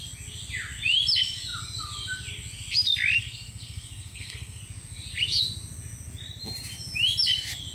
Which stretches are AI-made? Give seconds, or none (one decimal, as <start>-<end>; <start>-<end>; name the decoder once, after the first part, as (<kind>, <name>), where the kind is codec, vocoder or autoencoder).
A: 3.2-4.6 (codec, SNAC)

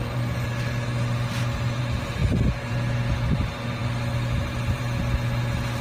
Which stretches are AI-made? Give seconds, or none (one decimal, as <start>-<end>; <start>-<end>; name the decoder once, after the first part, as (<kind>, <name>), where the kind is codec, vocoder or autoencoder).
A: none

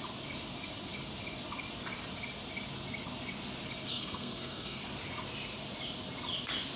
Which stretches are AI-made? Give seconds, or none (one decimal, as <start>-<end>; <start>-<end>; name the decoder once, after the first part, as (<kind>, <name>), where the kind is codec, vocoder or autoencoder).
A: 3.9-4.8 (codec, SNAC)